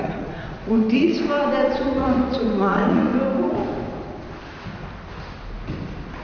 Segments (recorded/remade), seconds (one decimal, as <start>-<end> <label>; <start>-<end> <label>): 0.0-1.1 remade; 1.1-1.7 recorded; 1.7-3.1 remade; 3.1-6.2 recorded